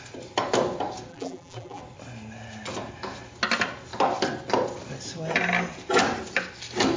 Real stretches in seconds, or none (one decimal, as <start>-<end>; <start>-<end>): 0.0-1.1; 1.8-7.0